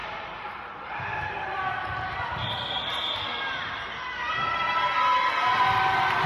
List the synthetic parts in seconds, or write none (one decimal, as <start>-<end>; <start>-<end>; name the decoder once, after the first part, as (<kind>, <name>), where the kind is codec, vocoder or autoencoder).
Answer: 0.0-2.2 (vocoder, BigVGAN v2)